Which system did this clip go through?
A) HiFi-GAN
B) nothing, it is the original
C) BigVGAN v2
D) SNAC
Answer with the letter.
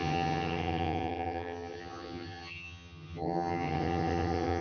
A